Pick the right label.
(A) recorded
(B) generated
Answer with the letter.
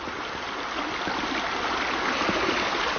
A